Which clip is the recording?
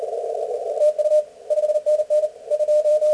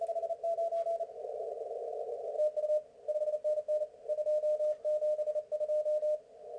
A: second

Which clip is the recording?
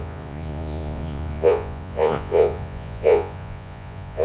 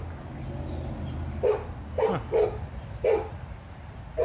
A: second